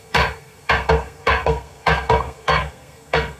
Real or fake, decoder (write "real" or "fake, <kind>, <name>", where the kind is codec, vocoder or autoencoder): fake, codec, SNAC